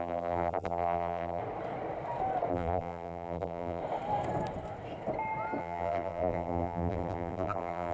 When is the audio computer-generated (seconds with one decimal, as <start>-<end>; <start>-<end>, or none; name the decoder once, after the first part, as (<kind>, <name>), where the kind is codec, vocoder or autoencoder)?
0.0-1.4 (vocoder, BigVGAN v2); 2.5-3.8; 5.6-7.9